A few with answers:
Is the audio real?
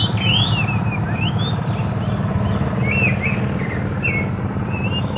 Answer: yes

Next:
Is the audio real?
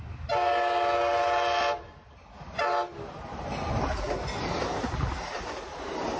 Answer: yes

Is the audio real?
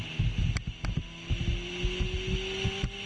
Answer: yes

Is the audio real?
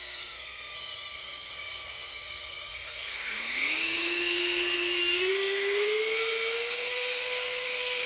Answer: no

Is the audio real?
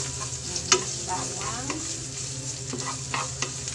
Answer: yes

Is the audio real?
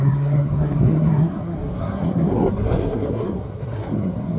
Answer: no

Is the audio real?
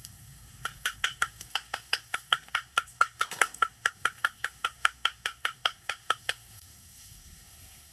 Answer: no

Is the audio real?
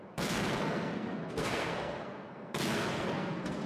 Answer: no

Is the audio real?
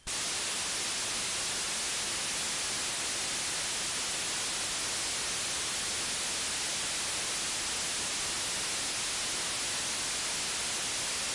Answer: yes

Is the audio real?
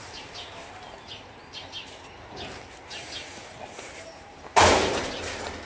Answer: yes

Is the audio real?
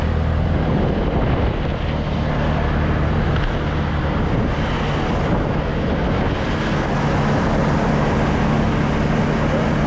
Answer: yes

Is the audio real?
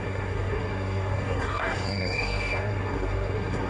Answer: no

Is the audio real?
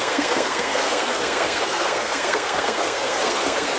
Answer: no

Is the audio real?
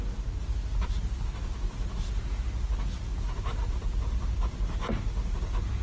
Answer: yes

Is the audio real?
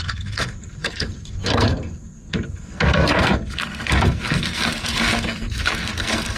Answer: no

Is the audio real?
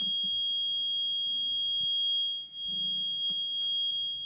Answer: yes